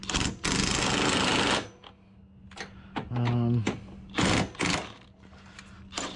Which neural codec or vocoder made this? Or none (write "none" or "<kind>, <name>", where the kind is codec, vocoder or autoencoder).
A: none